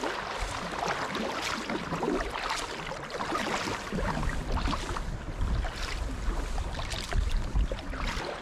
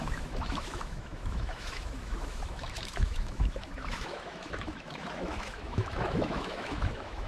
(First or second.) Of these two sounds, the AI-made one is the second